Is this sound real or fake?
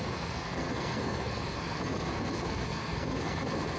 fake